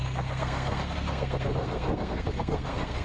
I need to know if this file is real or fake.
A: fake